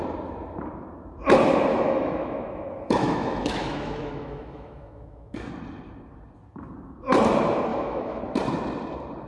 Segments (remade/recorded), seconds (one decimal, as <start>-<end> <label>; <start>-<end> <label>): 0.0-1.7 recorded; 1.7-5.5 remade; 5.5-7.7 recorded; 7.7-8.2 remade; 8.2-9.3 recorded